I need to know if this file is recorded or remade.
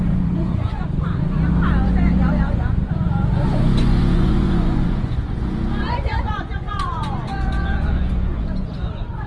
remade